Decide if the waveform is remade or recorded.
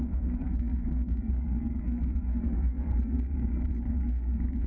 remade